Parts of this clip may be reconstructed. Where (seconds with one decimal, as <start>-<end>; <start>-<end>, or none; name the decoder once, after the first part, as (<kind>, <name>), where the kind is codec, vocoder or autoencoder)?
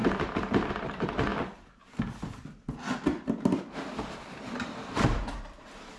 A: 0.0-1.3 (vocoder, BigVGAN v2); 4.9-6.0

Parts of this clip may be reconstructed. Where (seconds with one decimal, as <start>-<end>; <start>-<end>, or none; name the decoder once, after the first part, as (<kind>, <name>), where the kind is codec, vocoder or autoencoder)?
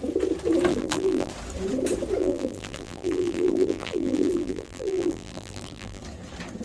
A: 0.7-1.3 (vocoder, BigVGAN v2); 2.2-6.0